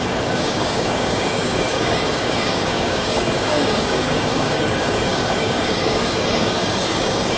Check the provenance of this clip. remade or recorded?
remade